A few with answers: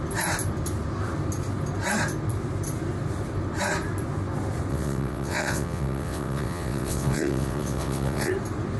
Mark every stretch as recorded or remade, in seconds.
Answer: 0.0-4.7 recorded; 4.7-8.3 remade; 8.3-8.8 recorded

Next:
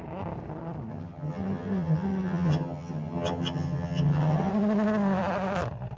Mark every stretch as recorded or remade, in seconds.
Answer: 0.0-0.9 recorded; 0.9-4.5 remade; 4.5-6.0 recorded

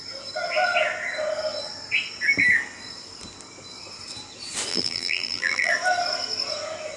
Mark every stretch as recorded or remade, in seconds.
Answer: 0.0-4.7 recorded; 4.7-5.7 remade; 5.7-7.0 recorded

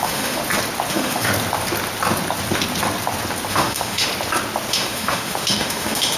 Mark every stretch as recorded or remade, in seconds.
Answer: 0.0-0.4 remade; 0.4-0.9 recorded; 0.9-1.3 remade; 1.3-3.5 recorded; 3.5-4.1 remade; 4.1-4.7 recorded; 4.7-6.2 remade

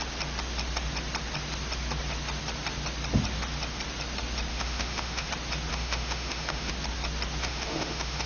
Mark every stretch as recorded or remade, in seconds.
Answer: 0.0-4.5 recorded; 4.5-5.3 remade; 5.3-5.7 recorded; 5.7-6.7 remade; 6.7-7.4 recorded; 7.4-8.3 remade